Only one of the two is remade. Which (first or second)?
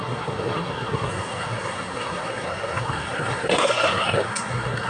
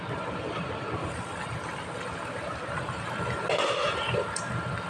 first